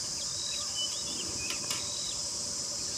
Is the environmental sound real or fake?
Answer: fake